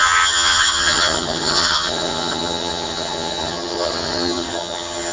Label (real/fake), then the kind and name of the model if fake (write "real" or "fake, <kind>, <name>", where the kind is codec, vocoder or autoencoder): fake, vocoder, HiFi-GAN